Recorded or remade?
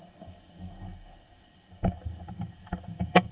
remade